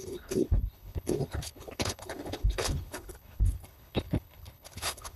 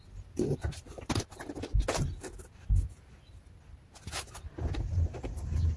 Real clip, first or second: second